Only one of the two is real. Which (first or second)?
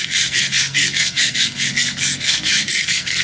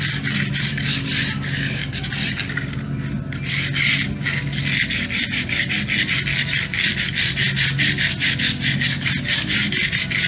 second